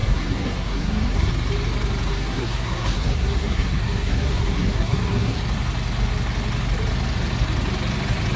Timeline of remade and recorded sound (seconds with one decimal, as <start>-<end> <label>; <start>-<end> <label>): 0.0-1.3 remade; 1.3-2.1 recorded; 2.1-5.4 remade; 5.4-8.4 recorded